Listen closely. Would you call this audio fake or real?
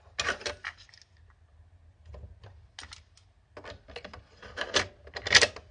real